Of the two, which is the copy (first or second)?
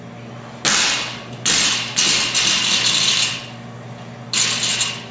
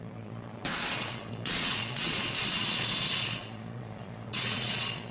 second